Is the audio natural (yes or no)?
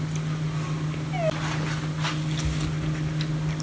yes